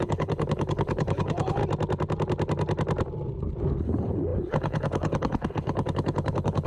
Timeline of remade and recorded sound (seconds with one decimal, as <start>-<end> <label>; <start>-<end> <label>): 0.0-1.6 remade; 1.6-3.8 recorded; 3.8-6.7 remade